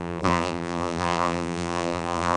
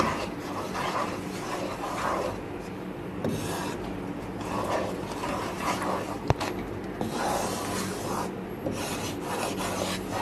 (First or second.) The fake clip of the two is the first